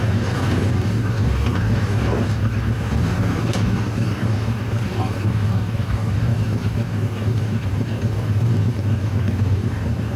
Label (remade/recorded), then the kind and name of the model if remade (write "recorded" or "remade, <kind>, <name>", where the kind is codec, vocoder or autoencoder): remade, codec, DAC